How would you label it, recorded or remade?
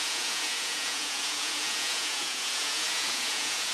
remade